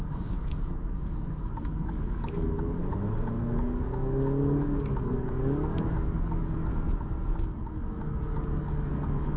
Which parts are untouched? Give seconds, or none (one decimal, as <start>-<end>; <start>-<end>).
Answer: 2.8-3.4; 6.7-7.4